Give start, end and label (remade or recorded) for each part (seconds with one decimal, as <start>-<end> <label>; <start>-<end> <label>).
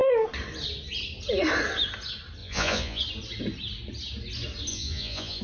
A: 0.0-2.4 recorded; 2.4-3.0 remade; 3.0-4.7 recorded; 4.7-5.4 remade